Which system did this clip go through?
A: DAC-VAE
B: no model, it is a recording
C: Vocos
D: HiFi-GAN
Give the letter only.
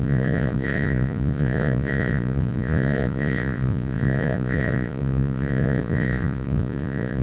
C